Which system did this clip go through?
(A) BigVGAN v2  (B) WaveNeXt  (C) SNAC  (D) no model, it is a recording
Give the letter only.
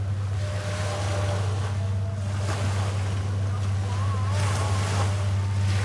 D